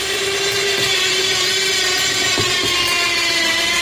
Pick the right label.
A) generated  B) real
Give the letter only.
A